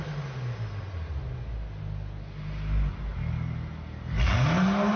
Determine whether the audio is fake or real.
real